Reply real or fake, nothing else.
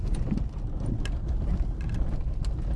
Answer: real